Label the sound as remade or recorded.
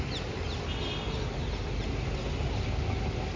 recorded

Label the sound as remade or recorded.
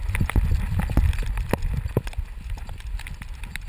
recorded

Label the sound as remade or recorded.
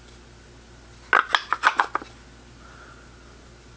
recorded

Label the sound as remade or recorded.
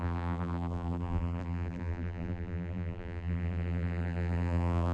remade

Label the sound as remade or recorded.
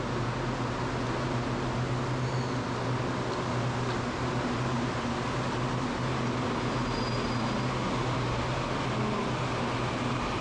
recorded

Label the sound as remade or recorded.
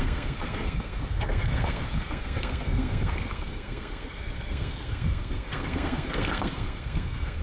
remade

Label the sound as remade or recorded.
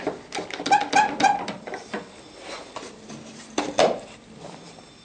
remade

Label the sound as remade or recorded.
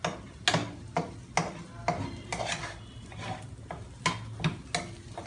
recorded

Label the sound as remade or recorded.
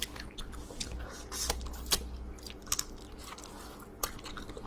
recorded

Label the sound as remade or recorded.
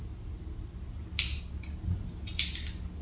recorded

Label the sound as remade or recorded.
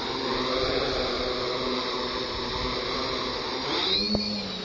recorded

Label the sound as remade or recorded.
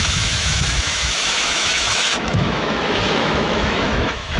remade